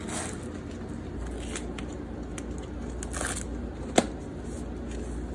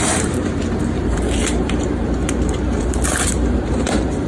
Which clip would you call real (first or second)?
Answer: first